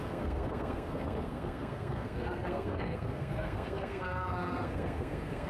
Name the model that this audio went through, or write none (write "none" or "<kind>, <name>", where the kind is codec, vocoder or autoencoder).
codec, SNAC